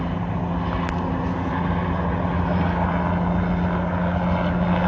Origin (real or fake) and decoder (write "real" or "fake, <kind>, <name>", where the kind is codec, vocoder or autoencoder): real